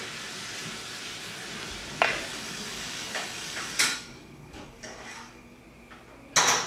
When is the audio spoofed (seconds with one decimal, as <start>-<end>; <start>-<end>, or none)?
2.3-5.6